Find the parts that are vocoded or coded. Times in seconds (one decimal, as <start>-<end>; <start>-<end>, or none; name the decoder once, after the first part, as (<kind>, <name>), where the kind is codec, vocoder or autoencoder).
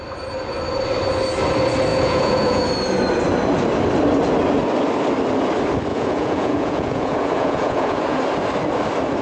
1.9-2.7 (vocoder, Vocos); 5.9-8.2